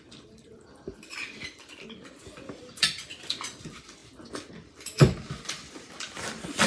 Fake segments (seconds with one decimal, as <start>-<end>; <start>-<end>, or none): 0.0-4.0